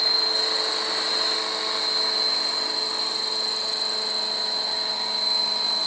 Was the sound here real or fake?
real